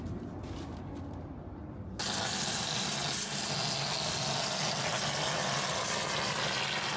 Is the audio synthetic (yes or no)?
no